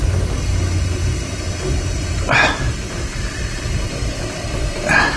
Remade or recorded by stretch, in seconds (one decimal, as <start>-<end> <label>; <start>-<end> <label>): 0.0-5.2 recorded